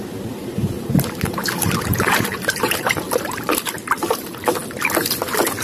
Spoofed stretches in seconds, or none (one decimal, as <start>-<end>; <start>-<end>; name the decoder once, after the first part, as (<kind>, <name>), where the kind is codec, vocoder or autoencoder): 0.4-3.6 (vocoder, BigVGAN v2)